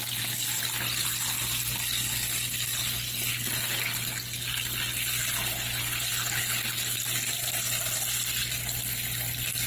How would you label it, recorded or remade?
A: recorded